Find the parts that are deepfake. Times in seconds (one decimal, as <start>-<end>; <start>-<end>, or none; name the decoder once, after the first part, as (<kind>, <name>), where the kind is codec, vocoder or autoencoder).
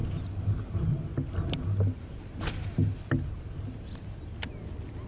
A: none